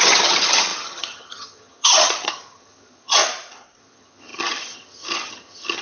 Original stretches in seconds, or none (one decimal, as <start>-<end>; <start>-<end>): 3.2-3.8